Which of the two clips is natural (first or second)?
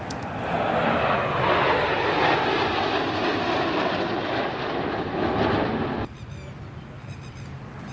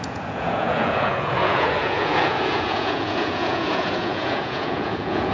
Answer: first